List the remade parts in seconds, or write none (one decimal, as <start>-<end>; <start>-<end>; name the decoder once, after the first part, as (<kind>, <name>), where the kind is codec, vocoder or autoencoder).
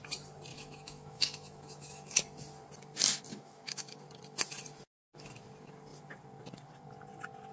0.5-2.2 (autoencoder, DAC-VAE); 3.3-4.0